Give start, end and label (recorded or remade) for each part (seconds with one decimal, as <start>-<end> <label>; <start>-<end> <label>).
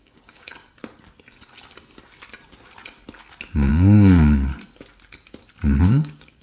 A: 0.0-0.6 remade; 0.6-3.7 recorded; 3.7-4.5 remade; 4.5-5.8 recorded; 5.8-6.4 remade